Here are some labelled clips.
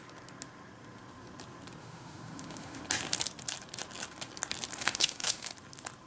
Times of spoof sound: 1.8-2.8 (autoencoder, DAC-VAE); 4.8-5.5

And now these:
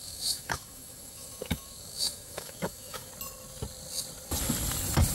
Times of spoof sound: 0.0-3.1 (autoencoder, DAC-VAE)

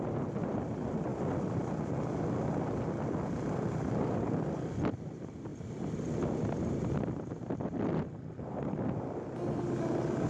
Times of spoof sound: none